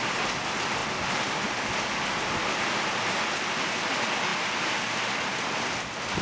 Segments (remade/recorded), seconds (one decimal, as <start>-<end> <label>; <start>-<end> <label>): 0.0-6.2 recorded